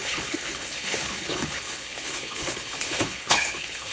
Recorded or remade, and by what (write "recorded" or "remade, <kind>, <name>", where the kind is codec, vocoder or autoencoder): remade, codec, HILCodec